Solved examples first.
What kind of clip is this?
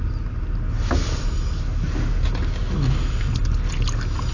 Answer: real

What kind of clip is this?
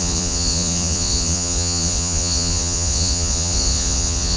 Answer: fake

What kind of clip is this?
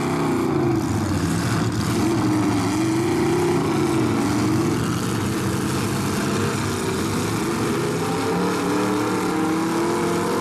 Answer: real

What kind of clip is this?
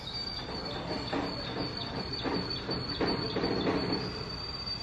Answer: real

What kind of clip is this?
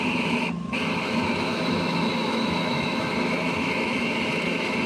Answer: fake